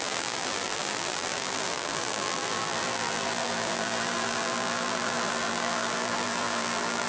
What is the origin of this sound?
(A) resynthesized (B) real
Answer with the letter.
A